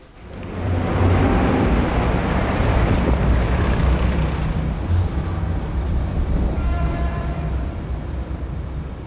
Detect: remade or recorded remade